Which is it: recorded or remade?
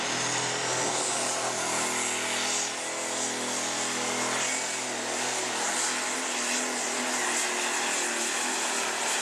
recorded